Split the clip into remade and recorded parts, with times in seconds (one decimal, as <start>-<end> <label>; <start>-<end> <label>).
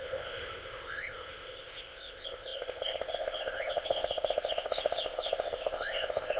0.0-6.4 remade